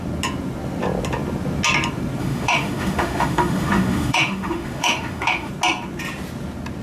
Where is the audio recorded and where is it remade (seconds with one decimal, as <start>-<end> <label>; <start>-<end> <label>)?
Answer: 0.0-2.2 recorded; 2.2-5.5 remade; 5.5-6.8 recorded